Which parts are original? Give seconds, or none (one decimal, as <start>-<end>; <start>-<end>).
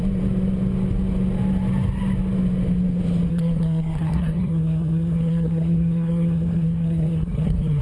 0.0-3.3